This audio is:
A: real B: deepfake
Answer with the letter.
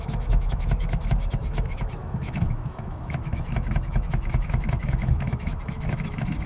B